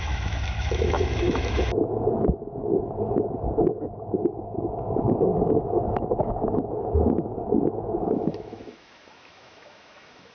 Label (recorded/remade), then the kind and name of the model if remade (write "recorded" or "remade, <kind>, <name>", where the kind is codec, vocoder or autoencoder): remade, autoencoder, DAC-VAE